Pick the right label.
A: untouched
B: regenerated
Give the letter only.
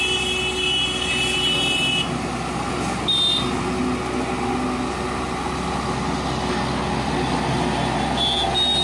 A